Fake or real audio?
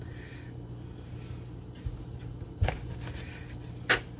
real